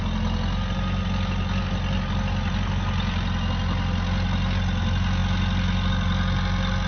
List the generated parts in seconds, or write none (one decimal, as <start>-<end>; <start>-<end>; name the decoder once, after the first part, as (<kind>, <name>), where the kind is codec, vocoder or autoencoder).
none